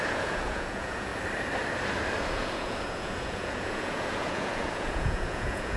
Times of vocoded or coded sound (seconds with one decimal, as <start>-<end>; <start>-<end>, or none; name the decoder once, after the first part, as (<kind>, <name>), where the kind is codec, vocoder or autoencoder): 0.0-1.1 (vocoder, Vocos); 2.2-5.8